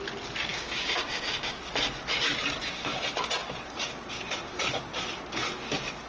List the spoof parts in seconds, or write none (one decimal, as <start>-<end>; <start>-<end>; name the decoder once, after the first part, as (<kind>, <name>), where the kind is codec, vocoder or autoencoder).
0.5-1.6 (codec, DAC)